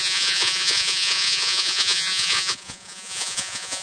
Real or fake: fake